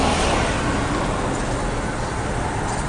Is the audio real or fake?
real